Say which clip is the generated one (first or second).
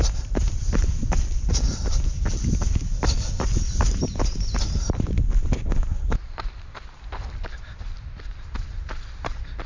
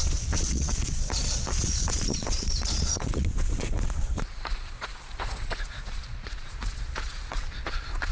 second